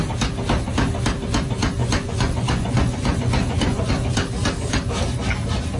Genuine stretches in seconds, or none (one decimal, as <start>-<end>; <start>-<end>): 0.0-1.8; 3.9-5.8